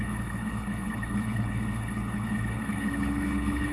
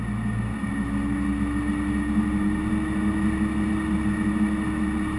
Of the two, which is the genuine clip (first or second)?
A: second